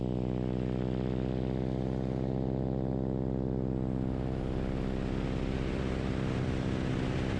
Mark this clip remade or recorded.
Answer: recorded